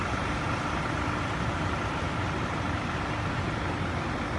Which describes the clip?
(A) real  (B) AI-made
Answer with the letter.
A